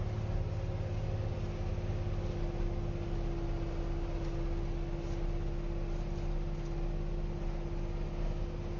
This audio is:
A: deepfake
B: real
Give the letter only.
B